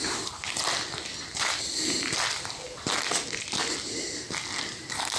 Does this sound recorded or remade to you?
recorded